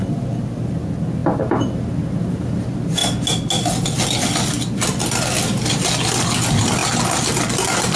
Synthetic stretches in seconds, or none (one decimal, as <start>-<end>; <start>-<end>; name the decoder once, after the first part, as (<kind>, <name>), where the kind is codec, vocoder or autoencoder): none